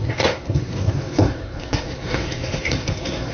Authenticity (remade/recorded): remade